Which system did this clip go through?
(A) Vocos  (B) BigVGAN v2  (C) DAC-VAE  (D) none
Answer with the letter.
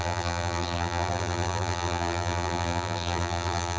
B